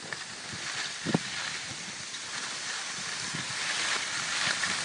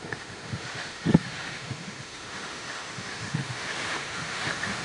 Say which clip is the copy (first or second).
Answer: second